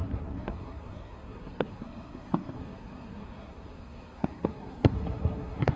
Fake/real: fake